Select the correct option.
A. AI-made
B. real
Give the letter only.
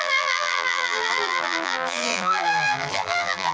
A